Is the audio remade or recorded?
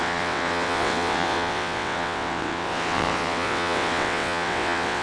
remade